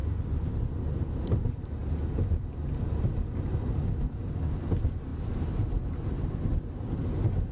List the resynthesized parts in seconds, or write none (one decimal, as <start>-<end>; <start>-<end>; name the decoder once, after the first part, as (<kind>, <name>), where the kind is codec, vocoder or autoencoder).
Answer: none